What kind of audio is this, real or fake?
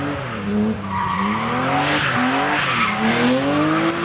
real